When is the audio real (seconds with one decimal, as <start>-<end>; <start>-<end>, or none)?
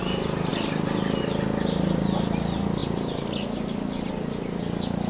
0.0-5.1